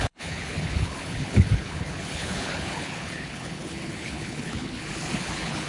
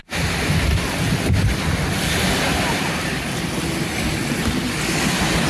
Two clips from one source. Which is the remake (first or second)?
first